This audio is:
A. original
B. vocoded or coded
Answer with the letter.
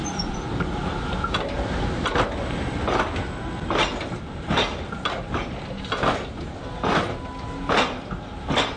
A